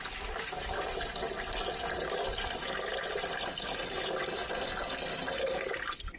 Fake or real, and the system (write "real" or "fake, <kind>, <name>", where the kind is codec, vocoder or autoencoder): real